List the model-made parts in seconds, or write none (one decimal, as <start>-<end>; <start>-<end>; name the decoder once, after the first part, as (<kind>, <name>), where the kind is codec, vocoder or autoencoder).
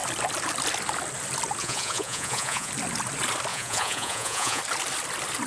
1.6-2.7 (vocoder, Vocos); 3.5-4.6